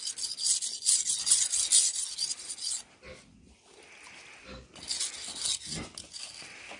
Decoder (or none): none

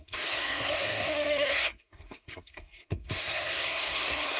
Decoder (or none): codec, SNAC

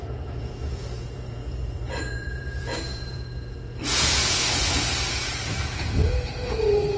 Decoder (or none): vocoder, Vocos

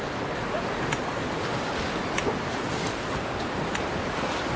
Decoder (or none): none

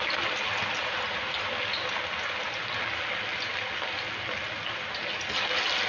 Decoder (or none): none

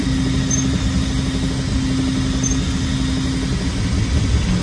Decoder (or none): none